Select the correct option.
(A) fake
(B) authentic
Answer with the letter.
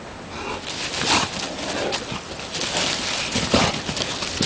B